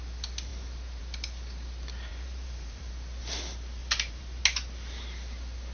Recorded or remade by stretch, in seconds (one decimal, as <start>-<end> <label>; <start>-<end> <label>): 0.0-2.1 recorded; 2.1-2.9 remade; 2.9-3.8 recorded; 3.8-4.4 remade; 4.4-5.7 recorded